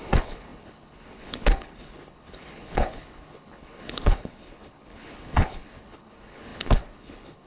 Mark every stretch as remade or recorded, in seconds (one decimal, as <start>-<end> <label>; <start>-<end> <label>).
0.0-7.5 remade